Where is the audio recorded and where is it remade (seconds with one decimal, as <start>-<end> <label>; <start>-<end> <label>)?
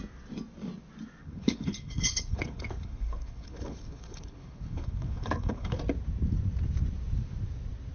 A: 0.0-1.2 recorded; 1.2-5.8 remade; 5.8-7.9 recorded